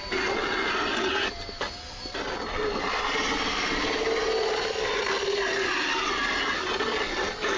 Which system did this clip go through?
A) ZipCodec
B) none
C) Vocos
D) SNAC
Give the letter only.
B